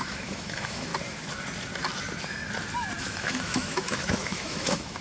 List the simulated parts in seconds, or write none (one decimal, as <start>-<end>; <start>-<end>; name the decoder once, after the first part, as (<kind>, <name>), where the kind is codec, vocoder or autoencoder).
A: 0.0-0.9 (autoencoder, DAC-VAE); 3.0-5.0